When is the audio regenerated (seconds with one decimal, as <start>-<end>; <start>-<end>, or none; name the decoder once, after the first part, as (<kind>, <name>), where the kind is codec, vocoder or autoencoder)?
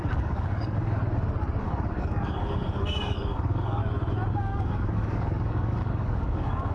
0.0-1.0 (codec, DAC); 1.6-3.8; 4.3-6.7